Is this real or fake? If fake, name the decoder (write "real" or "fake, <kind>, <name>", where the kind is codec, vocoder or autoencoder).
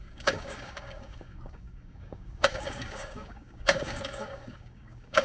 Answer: fake, codec, DAC